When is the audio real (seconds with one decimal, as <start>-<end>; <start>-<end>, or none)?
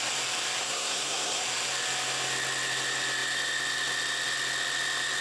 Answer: 0.0-0.6; 1.4-5.2